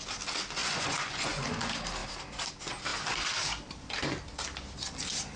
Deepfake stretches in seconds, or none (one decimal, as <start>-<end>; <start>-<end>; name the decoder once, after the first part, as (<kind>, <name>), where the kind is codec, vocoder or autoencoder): 0.6-1.4 (vocoder, Vocos)